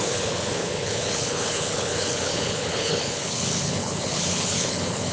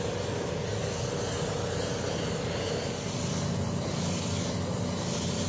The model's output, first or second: first